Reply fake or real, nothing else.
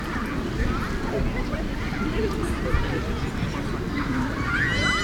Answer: real